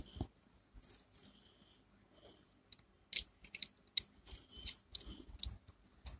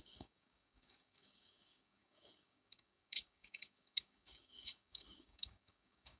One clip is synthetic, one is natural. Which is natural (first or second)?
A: first